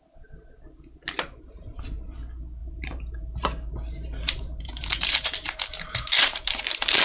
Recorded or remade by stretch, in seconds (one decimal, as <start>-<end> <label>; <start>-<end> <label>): 0.0-1.3 recorded; 1.3-2.0 remade; 2.0-2.6 recorded; 2.6-7.0 remade